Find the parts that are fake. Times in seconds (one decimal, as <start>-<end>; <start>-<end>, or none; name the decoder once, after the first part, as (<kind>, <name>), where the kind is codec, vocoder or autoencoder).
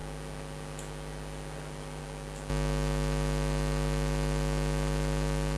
none